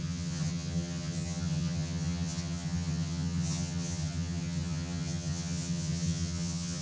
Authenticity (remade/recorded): remade